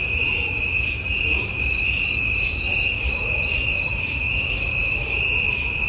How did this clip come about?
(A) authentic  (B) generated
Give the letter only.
B